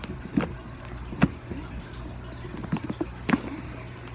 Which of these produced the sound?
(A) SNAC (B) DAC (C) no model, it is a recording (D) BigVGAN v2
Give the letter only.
C